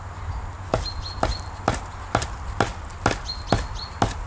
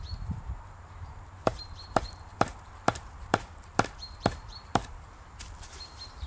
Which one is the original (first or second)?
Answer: first